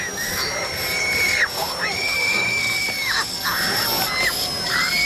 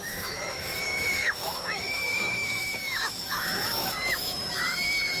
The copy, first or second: second